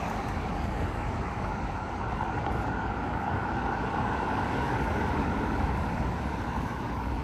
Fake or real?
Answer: fake